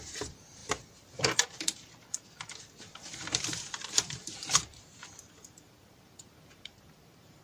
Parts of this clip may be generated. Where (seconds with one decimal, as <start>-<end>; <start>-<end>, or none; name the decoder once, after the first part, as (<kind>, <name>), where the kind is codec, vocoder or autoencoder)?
0.0-7.4 (vocoder, BigVGAN v2)